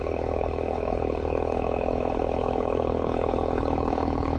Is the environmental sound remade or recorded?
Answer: remade